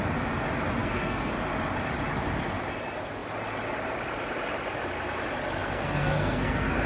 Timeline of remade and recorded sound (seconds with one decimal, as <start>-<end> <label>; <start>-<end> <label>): 0.0-0.8 recorded; 0.8-1.3 remade; 1.3-5.6 recorded; 5.6-6.9 remade